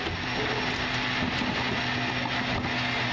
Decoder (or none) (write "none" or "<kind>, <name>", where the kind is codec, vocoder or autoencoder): none